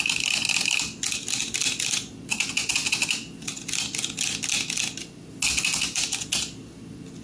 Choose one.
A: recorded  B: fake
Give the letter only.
A